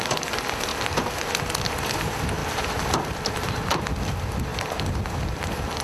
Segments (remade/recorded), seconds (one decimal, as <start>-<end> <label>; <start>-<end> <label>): 0.0-5.8 recorded